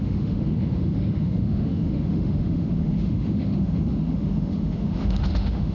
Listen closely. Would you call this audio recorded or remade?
remade